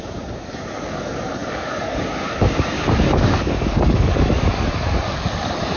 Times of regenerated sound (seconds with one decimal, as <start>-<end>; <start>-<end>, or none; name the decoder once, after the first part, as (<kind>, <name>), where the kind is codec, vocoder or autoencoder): 0.0-5.8 (codec, DAC)